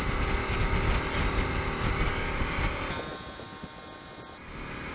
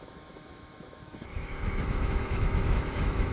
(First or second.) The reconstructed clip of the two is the second